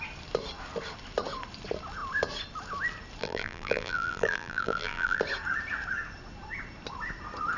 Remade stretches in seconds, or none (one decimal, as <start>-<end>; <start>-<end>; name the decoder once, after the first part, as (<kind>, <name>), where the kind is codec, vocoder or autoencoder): 3.2-5.2 (vocoder, BigVGAN v2)

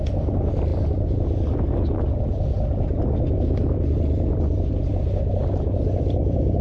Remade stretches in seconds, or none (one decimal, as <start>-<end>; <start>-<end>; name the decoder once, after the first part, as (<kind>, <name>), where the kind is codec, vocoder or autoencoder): none

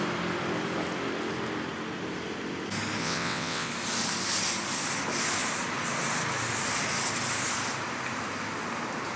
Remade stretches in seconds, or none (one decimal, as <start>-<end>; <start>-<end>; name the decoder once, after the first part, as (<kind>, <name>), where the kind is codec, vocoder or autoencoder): 3.0-3.7 (vocoder, WaveNeXt)

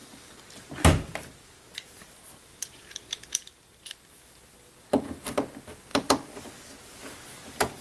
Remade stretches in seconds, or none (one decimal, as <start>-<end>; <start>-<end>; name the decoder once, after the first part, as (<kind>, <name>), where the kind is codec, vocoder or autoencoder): 5.9-6.4 (vocoder, BigVGAN v2)

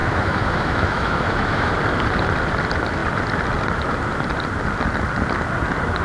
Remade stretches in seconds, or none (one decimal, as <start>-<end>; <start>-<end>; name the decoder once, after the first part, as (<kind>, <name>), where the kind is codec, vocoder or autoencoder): 0.0-1.7 (autoencoder, DAC-VAE)

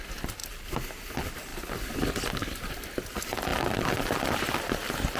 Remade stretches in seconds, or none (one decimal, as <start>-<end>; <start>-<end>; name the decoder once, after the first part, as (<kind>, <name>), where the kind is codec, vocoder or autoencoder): none